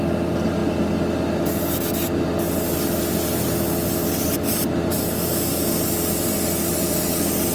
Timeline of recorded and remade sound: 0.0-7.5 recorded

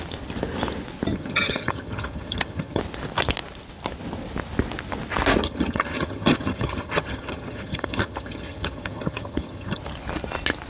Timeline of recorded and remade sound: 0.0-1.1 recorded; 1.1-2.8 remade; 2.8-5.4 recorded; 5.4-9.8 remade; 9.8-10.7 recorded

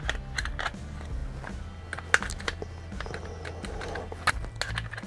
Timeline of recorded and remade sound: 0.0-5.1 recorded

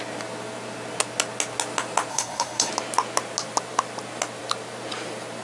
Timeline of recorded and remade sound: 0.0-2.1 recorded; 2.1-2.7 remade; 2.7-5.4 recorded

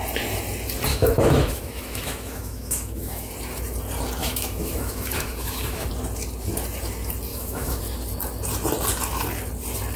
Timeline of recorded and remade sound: 0.0-0.9 recorded; 0.9-3.3 remade; 3.3-4.2 recorded; 4.2-5.9 remade; 5.9-7.3 recorded; 7.3-7.8 remade; 7.8-10.0 recorded

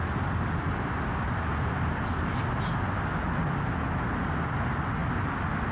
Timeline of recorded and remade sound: 0.0-5.7 recorded

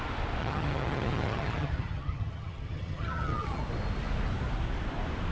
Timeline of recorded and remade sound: 0.0-0.4 recorded; 0.4-3.6 remade; 3.6-5.3 recorded